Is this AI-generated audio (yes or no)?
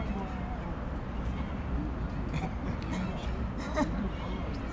no